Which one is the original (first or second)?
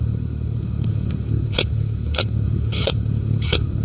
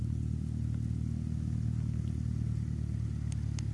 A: second